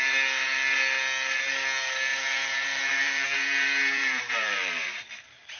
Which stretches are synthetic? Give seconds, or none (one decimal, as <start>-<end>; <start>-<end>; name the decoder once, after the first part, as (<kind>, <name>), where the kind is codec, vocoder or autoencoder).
2.1-5.6 (vocoder, BigVGAN v2)